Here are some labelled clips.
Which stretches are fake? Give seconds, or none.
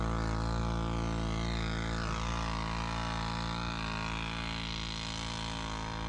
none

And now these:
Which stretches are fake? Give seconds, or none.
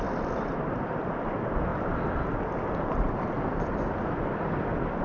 none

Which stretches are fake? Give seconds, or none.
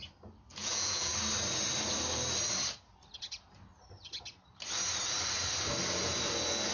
0.5-1.1 (vocoder, Vocos)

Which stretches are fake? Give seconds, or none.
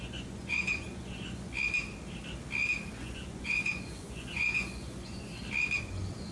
0.0-1.5 (vocoder, Vocos); 3.0-5.3; 5.8-6.3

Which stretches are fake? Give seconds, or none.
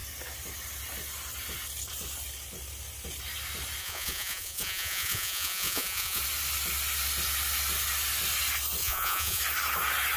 3.8-6.2 (vocoder, Vocos); 8.8-9.4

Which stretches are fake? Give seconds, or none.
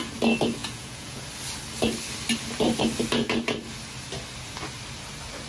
0.6-1.2 (vocoder, Vocos)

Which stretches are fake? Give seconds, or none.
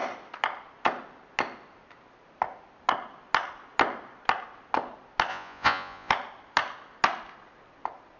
5.3-6.1 (vocoder, Vocos)